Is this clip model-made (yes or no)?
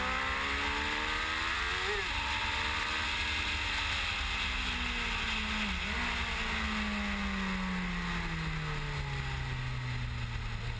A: no